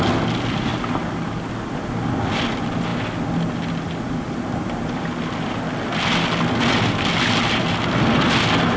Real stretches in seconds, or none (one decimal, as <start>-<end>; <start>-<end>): 0.0-8.8